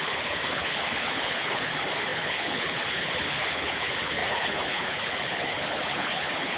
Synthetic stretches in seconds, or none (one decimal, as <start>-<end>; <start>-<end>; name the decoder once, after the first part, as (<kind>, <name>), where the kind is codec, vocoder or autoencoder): 0.0-6.6 (codec, HILCodec)